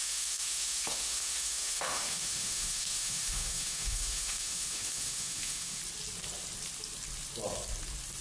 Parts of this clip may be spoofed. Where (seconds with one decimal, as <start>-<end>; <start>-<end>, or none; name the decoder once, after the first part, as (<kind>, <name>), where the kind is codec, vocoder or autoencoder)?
0.0-5.8 (autoencoder, DAC-VAE)